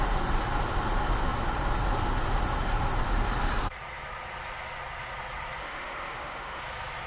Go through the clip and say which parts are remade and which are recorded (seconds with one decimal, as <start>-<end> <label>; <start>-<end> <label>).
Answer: 0.0-5.6 recorded; 5.6-6.6 remade; 6.6-7.1 recorded